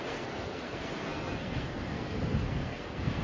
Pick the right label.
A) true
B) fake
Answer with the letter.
B